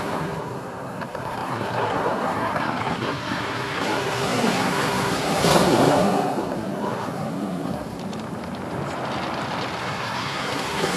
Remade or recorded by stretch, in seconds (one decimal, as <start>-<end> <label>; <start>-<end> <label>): 0.0-8.0 remade; 8.0-9.8 recorded; 9.8-11.0 remade